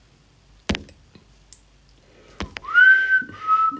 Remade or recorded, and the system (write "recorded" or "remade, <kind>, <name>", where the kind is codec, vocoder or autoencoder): recorded